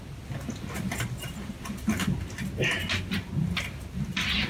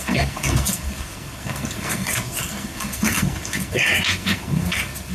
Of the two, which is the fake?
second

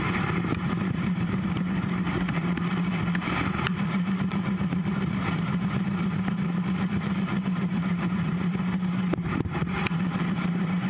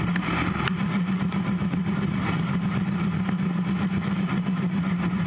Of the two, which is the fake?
first